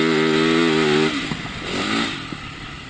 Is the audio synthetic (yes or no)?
no